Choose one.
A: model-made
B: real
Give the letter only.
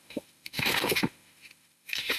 A